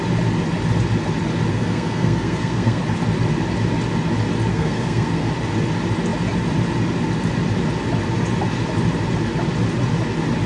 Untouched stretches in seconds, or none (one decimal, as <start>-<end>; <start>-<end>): 0.0-1.5; 2.8-4.5; 5.3-10.5